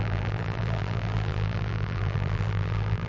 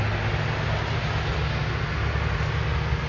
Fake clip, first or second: first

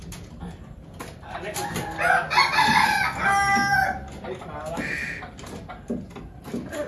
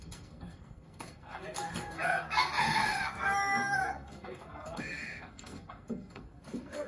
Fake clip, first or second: second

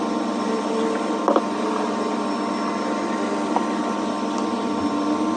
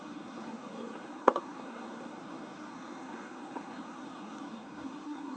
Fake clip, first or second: second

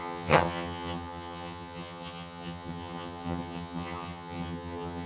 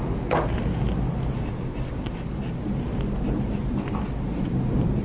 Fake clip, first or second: first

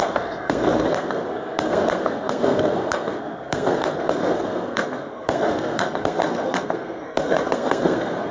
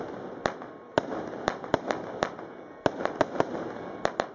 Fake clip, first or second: first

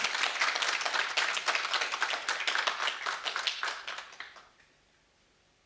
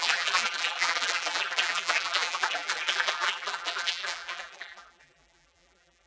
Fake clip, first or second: second